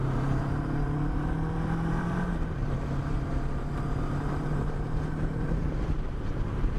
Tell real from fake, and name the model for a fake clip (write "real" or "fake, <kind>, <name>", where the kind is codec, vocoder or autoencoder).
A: fake, vocoder, BigVGAN v2